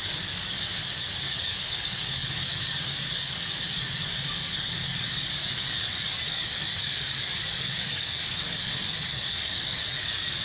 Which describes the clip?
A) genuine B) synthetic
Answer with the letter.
B